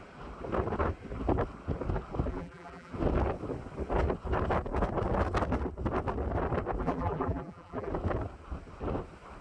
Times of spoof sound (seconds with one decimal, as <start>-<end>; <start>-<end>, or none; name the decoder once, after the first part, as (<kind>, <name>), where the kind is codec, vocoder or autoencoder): 2.3-2.9 (vocoder, BigVGAN v2); 6.8-7.9

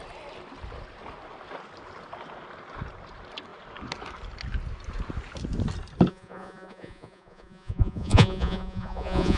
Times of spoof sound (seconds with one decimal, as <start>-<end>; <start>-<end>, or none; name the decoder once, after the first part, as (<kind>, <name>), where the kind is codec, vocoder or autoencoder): 6.1-9.4 (vocoder, Vocos)

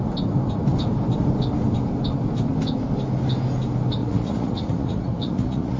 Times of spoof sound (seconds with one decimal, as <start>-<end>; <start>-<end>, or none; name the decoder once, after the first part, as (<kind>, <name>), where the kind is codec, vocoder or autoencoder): 4.0-5.8 (vocoder, Vocos)

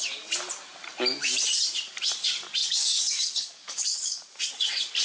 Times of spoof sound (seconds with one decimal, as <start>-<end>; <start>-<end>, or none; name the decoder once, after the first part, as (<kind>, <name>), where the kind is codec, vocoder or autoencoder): 2.6-4.4 (codec, DAC)

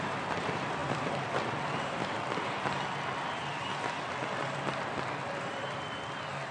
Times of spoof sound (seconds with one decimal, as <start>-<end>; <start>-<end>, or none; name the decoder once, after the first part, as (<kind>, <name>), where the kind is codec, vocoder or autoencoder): 0.0-6.5 (vocoder, BigVGAN v2)

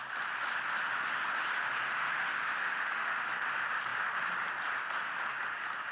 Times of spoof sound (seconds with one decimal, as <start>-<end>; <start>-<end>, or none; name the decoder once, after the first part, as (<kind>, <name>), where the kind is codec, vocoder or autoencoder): 1.9-3.1 (autoencoder, DAC-VAE)

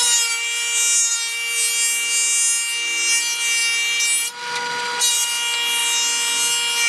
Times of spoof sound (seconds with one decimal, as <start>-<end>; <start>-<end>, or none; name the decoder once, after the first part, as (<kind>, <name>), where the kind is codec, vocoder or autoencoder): none

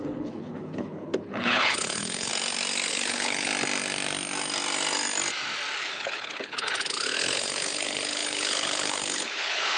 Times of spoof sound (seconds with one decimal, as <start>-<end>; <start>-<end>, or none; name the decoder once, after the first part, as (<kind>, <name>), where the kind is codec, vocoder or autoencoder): 0.0-2.3 (codec, HILCodec); 2.9-3.5; 5.8-9.8